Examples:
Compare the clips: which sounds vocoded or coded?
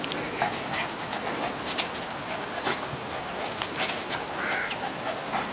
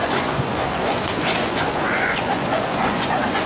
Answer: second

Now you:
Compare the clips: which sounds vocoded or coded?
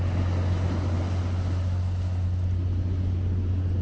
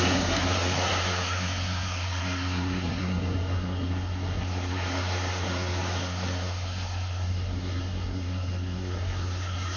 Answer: second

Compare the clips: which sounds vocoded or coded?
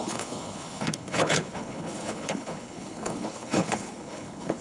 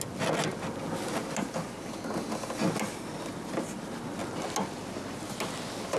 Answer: first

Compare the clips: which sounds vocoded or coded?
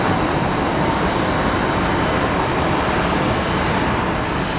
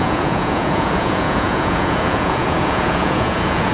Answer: second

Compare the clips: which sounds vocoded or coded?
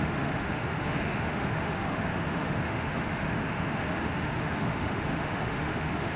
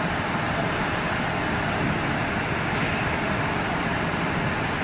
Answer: first